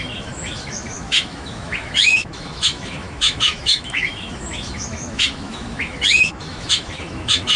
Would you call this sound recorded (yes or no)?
no